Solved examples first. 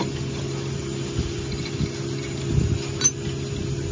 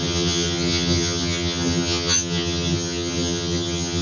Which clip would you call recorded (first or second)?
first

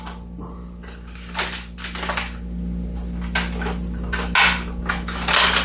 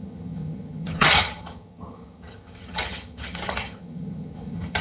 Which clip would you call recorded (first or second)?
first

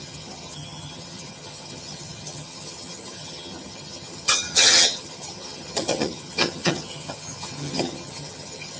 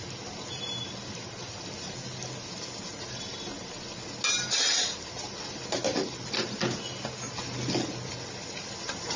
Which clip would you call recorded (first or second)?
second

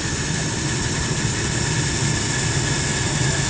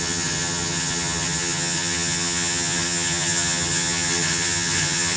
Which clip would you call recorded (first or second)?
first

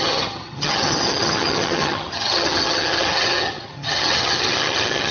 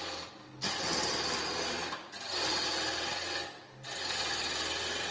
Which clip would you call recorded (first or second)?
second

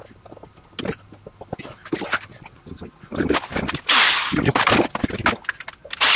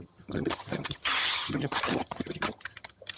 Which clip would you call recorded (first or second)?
first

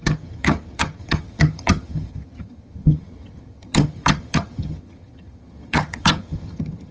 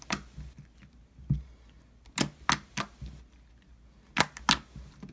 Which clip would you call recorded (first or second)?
second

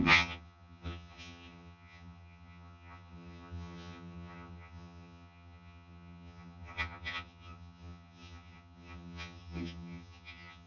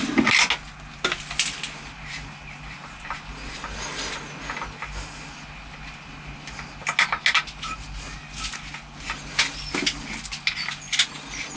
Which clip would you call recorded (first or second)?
second